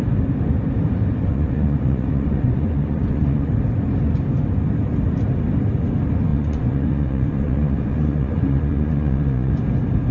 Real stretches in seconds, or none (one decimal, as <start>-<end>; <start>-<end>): 0.0-1.3; 3.5-6.3; 9.5-10.1